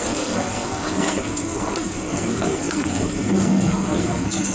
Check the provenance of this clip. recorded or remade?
remade